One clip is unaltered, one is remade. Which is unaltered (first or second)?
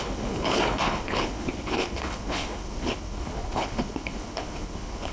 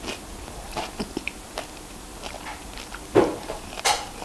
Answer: second